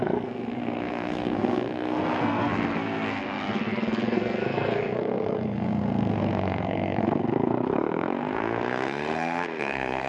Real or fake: fake